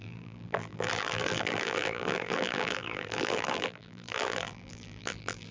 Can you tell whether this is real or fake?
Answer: fake